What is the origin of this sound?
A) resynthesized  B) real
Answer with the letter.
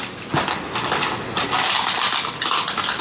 B